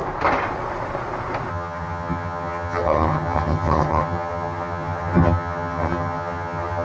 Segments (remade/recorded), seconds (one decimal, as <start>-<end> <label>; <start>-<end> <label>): 0.0-1.5 recorded; 1.5-6.8 remade

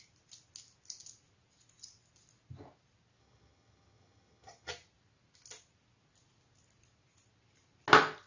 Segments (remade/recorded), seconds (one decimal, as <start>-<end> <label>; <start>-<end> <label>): 0.0-3.2 recorded; 3.2-4.7 remade; 4.7-8.3 recorded

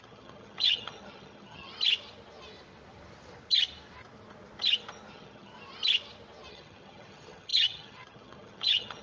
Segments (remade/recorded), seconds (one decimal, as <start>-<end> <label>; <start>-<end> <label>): 0.0-1.7 remade; 1.7-5.1 recorded; 5.1-5.5 remade; 5.5-6.5 recorded; 6.5-9.0 remade

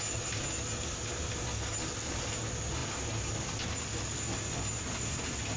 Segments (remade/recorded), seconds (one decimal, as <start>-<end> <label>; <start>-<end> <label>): 0.0-5.6 recorded